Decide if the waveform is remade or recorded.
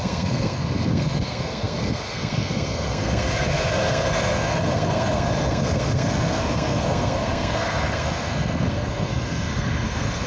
remade